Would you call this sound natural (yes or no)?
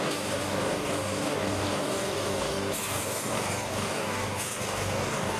no